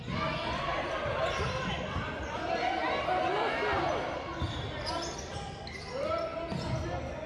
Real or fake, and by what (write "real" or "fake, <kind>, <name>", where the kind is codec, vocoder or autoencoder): real